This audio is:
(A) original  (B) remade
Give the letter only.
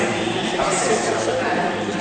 B